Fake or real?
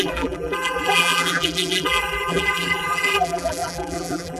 fake